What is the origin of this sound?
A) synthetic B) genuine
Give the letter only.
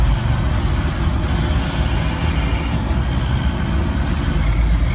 B